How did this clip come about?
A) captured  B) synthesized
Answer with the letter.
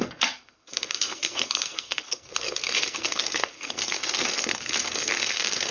B